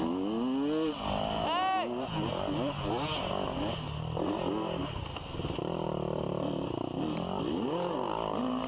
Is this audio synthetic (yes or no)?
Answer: no